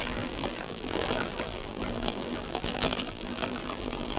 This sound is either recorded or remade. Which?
remade